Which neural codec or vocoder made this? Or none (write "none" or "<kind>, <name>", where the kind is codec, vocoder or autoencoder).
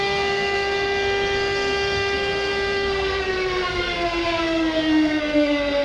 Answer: codec, SNAC